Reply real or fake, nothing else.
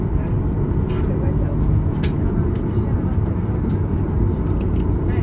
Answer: real